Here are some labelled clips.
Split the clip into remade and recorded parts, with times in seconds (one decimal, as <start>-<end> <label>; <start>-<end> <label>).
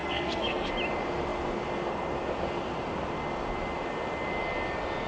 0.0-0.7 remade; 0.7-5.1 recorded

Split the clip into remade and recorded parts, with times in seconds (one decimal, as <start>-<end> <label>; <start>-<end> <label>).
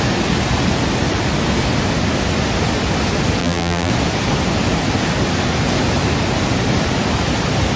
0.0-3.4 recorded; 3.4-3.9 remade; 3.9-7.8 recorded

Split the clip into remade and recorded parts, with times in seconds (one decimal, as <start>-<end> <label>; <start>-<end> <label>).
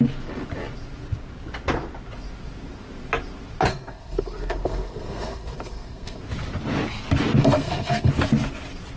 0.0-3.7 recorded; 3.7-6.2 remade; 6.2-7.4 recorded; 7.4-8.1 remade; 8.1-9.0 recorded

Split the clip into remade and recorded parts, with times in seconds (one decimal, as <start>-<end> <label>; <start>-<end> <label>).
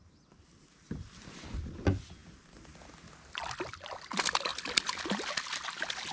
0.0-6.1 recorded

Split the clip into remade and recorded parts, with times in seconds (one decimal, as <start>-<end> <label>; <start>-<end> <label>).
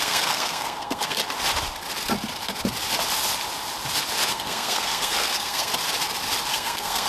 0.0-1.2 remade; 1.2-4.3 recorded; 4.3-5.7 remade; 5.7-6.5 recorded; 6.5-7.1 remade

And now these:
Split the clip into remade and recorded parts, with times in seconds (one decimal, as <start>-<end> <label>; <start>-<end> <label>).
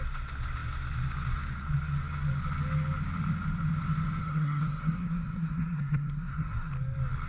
0.0-4.2 recorded; 4.2-6.7 remade; 6.7-7.3 recorded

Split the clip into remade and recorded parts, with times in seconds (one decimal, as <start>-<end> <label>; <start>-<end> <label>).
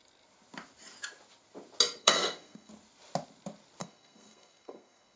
0.0-2.0 recorded; 2.0-2.7 remade; 2.7-3.8 recorded; 3.8-5.2 remade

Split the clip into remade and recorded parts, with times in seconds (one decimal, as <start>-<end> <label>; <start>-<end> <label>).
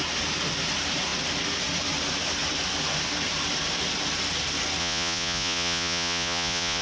0.0-4.8 recorded; 4.8-6.8 remade